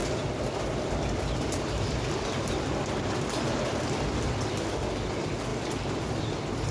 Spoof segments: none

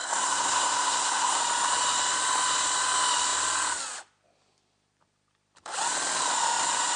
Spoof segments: 0.0-1.4 (codec, SNAC)

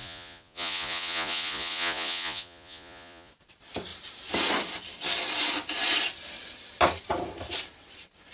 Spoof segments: 0.0-3.3 (vocoder, Vocos)

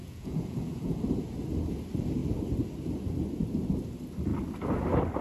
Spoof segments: 0.0-1.0 (vocoder, Vocos)